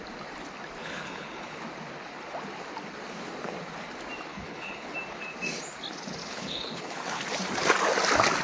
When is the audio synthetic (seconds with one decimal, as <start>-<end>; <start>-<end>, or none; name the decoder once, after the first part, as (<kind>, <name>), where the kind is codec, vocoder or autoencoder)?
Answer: 0.8-1.6 (codec, HILCodec); 4.3-4.9; 6.2-7.2